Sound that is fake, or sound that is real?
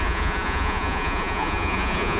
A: fake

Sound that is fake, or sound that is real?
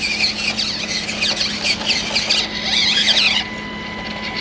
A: real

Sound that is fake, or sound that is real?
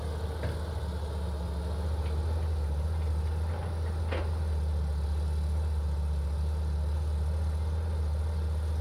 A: real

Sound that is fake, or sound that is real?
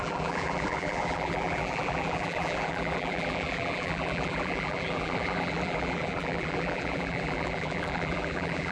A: fake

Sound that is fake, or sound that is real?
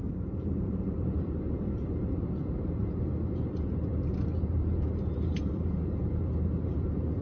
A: fake